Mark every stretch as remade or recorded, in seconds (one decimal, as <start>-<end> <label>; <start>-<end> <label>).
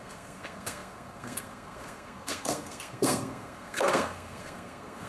0.0-5.1 remade